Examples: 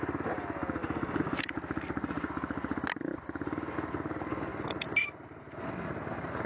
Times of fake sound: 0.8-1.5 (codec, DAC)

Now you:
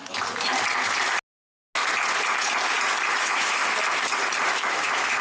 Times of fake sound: 3.1-3.6 (autoencoder, DAC-VAE); 4.5-5.2

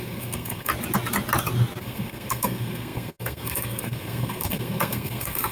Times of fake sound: 0.0-0.7 (codec, SNAC); 1.8-5.5